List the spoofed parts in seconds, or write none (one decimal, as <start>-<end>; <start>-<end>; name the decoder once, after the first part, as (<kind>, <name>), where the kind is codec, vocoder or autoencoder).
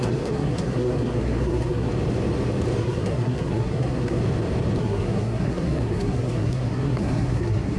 0.0-1.9 (codec, SNAC); 2.8-4.2; 4.8-7.8